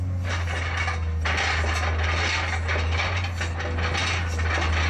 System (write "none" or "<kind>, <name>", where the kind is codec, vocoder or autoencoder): none